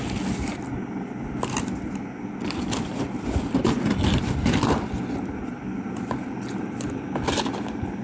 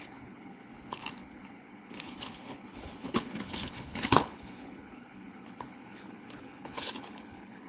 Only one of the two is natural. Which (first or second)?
first